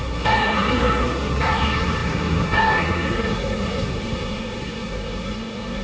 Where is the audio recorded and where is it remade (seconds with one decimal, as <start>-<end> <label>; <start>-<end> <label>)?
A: 0.0-5.8 remade